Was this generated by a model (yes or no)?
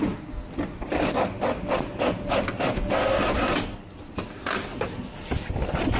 no